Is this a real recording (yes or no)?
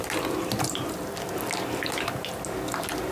yes